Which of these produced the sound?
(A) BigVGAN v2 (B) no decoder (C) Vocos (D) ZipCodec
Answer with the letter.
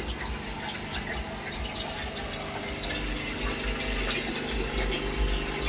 B